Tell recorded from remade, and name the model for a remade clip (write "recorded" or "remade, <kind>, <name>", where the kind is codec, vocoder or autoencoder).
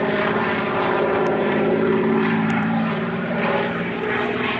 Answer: remade, vocoder, BigVGAN v2